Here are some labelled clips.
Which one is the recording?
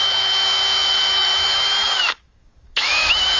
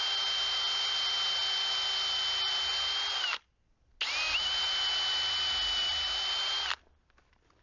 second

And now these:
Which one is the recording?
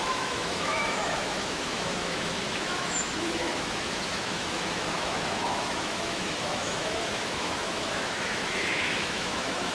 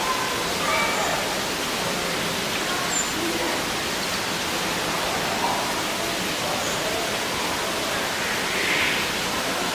second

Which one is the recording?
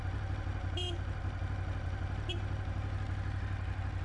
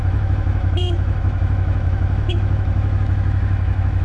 first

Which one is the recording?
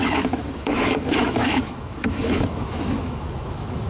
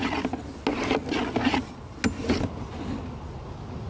second